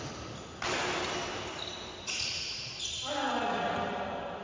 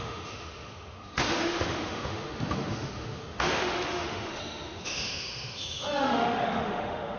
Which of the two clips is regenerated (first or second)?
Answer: second